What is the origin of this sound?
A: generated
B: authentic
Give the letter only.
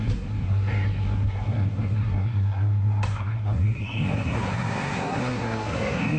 A